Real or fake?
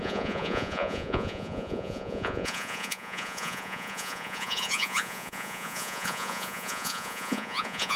fake